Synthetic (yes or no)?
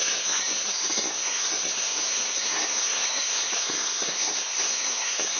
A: yes